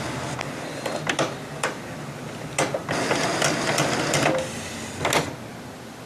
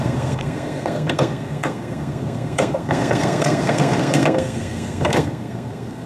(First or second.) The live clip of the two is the first